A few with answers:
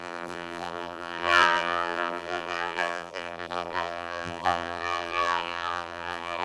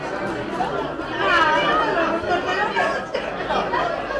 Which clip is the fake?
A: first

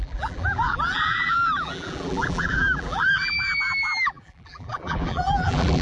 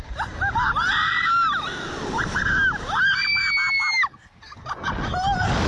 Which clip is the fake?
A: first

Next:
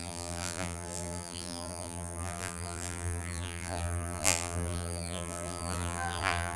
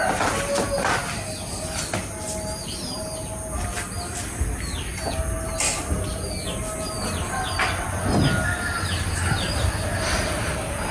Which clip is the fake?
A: first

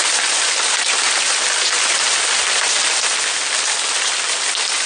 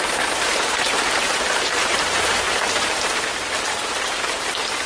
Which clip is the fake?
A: second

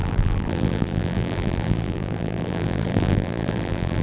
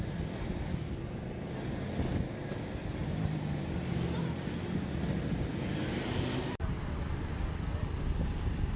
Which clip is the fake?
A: first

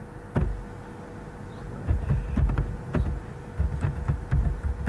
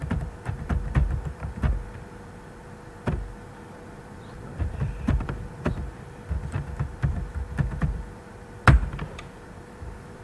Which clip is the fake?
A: second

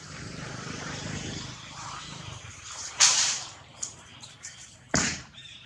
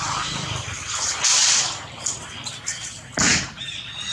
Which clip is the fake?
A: first